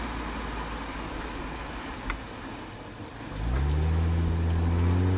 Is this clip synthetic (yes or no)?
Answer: no